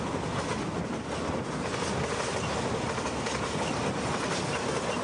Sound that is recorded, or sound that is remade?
recorded